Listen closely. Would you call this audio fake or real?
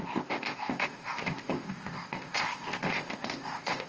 fake